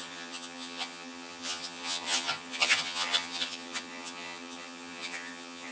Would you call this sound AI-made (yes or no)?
yes